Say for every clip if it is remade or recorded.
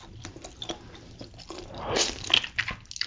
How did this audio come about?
recorded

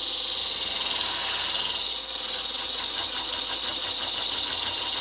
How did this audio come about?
recorded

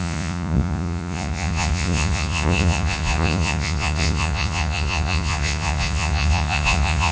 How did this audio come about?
remade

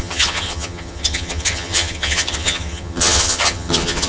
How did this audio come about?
remade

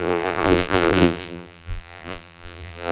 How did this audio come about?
remade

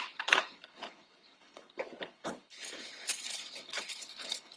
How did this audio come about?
remade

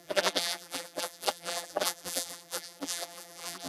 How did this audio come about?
remade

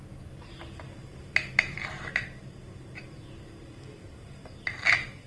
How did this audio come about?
remade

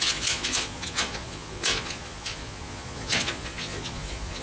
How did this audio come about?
remade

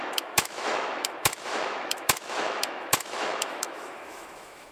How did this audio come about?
remade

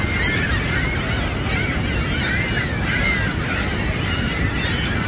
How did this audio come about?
recorded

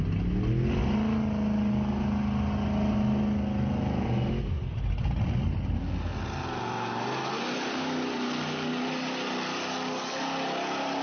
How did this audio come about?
recorded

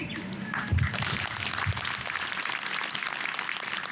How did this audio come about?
recorded